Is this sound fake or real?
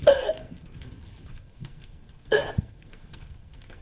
fake